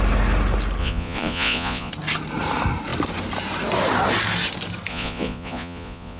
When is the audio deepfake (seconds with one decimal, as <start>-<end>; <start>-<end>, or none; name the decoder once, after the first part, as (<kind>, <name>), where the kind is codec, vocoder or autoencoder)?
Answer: 0.8-1.9 (vocoder, Vocos); 4.9-6.2